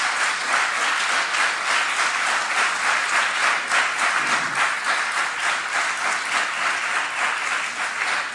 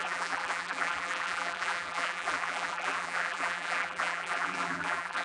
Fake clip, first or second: second